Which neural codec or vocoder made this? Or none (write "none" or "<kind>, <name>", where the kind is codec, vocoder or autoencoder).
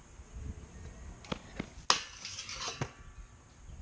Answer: none